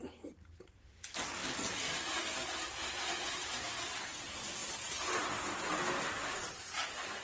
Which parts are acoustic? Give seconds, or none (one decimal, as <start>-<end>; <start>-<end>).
0.0-7.2